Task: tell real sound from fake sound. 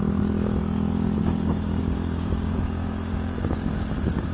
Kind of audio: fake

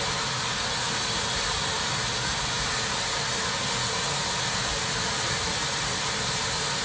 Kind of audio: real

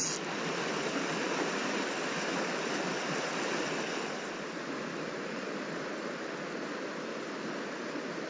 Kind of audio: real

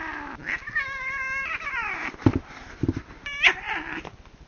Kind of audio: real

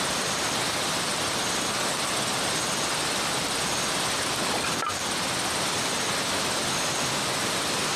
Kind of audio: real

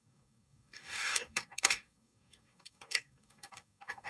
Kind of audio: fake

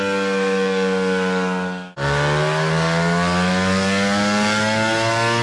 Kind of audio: fake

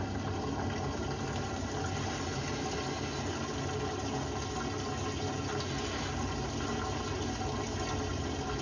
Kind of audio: real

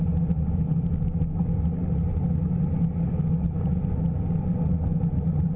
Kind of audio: real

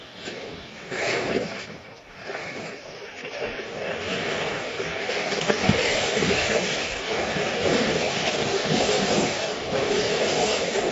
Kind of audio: fake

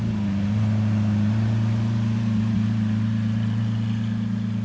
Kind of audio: real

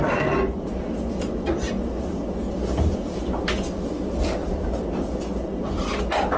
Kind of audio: real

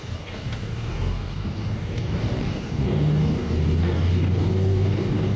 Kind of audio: fake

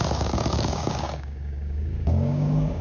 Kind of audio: fake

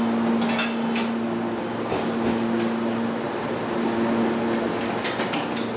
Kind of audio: real